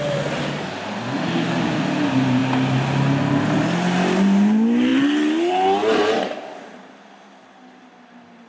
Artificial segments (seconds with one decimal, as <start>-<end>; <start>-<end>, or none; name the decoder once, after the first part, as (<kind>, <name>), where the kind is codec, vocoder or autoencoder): none